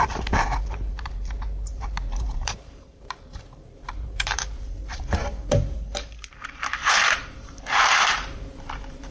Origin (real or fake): fake